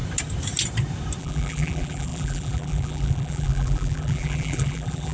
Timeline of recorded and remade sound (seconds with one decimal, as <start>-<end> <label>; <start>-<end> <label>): 0.0-1.2 recorded; 1.2-5.1 remade